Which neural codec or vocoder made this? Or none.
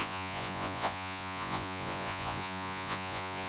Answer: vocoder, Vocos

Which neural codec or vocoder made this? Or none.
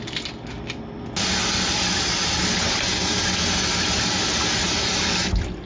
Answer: none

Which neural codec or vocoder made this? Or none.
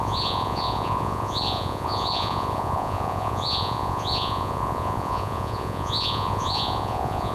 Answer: vocoder, Vocos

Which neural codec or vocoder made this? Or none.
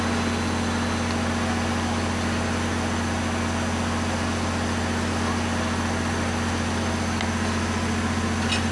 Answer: none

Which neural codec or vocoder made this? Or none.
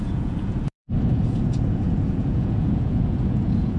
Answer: vocoder, Vocos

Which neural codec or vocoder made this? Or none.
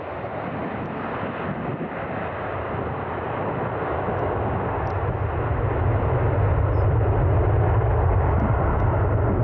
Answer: none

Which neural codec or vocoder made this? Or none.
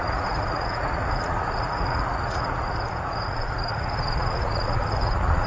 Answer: vocoder, Vocos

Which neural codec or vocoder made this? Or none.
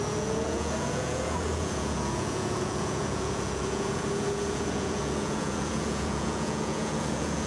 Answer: vocoder, Vocos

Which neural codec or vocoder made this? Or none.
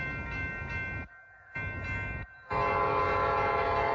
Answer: none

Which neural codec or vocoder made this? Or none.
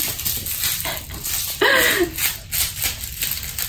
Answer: none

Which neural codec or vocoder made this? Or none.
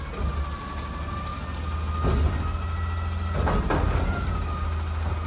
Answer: none